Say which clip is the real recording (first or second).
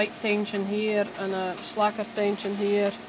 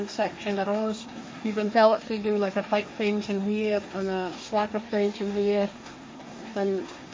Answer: first